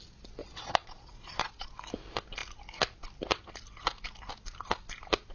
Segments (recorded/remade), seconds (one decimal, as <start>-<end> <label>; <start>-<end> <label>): 0.0-0.4 recorded; 0.4-1.8 remade; 1.8-5.3 recorded